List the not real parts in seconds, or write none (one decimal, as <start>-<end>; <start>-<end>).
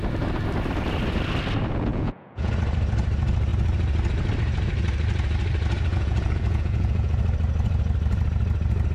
1.9-2.5; 5.9-7.1